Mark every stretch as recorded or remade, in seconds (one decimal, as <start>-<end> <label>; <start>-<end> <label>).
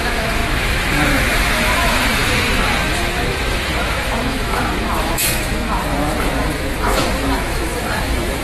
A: 0.0-2.2 remade; 2.2-2.8 recorded; 2.8-8.4 remade